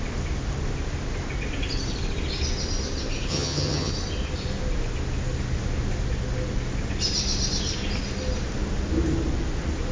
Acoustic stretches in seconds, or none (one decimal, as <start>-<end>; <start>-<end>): 0.0-3.3; 3.9-9.9